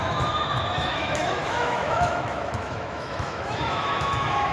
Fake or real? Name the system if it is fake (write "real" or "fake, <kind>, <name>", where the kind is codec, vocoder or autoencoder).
fake, autoencoder, DAC-VAE